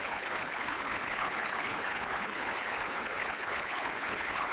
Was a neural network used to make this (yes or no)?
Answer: yes